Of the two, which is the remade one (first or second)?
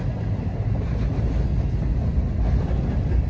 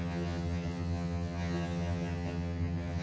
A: second